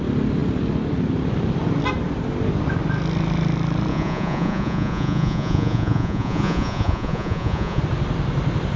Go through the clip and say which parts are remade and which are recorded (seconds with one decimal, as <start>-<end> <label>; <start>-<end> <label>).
0.0-3.9 recorded; 3.9-7.8 remade; 7.8-8.8 recorded